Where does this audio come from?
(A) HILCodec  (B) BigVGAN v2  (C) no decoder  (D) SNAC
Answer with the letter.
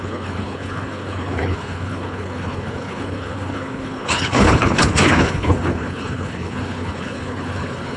A